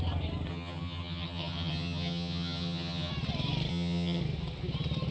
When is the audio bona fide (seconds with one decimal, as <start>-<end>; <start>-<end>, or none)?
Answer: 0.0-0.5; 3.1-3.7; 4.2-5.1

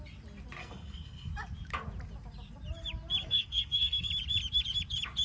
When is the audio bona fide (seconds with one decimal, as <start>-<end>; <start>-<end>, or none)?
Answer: 0.0-0.6; 1.3-3.2; 4.1-5.2

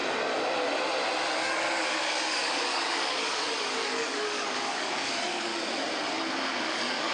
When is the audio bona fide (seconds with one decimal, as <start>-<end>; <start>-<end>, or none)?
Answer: 0.0-1.4; 5.5-6.6

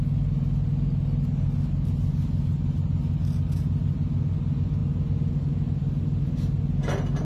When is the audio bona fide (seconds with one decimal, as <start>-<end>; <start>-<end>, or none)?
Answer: 0.0-7.2